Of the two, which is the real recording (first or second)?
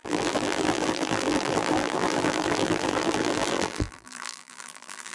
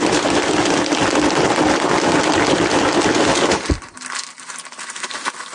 second